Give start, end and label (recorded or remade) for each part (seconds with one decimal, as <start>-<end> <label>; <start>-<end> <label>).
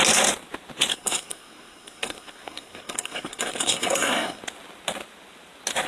0.0-0.9 recorded; 0.9-4.4 remade; 4.4-5.9 recorded